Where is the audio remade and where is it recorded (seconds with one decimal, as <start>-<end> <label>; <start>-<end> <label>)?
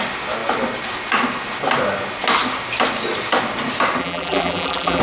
0.0-4.0 recorded; 4.0-5.0 remade